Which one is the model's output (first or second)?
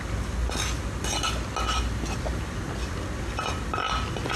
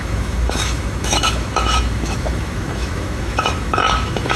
second